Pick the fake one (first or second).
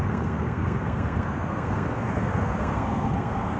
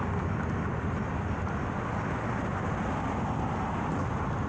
first